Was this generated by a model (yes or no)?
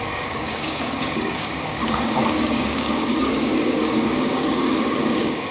yes